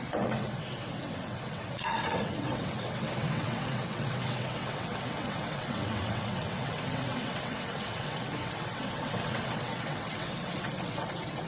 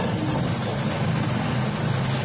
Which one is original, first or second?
second